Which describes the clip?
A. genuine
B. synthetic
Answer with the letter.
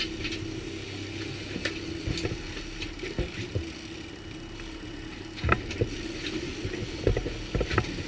A